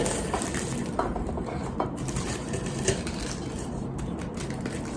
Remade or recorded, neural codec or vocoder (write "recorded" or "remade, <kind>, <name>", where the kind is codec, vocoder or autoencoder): recorded